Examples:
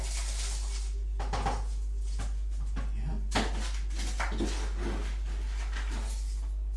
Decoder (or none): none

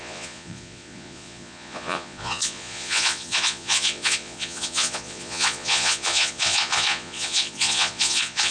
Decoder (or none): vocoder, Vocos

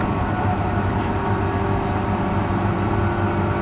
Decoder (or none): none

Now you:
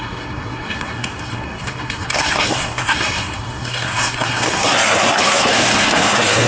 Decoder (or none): codec, SNAC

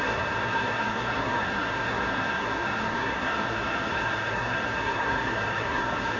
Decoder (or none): codec, SNAC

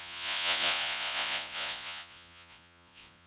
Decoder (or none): vocoder, Vocos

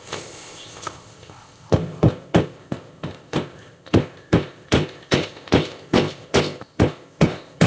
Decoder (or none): codec, ZipCodec